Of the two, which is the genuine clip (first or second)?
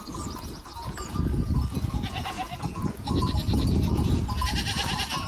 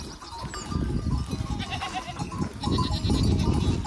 second